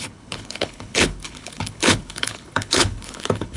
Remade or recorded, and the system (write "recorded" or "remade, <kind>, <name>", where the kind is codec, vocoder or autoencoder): remade, codec, HILCodec